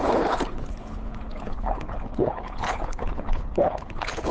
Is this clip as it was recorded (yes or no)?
no